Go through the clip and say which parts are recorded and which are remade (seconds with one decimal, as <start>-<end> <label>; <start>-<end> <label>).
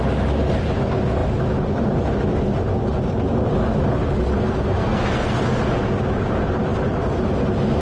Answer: 0.0-4.4 recorded; 4.4-5.4 remade; 5.4-7.8 recorded